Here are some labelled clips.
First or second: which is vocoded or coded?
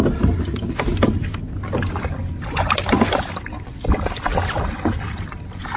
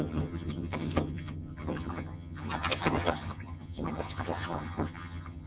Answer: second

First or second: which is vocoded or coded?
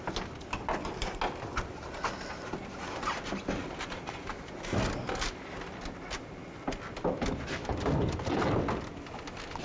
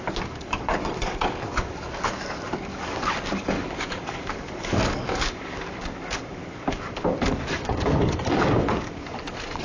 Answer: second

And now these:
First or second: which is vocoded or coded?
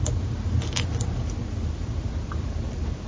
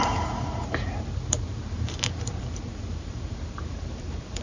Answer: second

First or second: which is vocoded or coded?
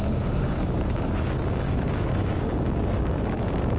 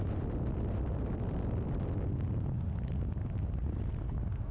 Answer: first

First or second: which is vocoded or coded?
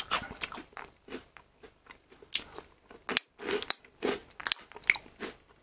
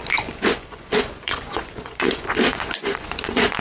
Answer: second